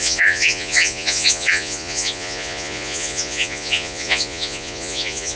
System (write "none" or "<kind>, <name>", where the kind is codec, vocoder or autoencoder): vocoder, Vocos